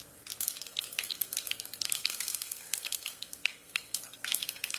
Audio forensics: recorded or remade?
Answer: remade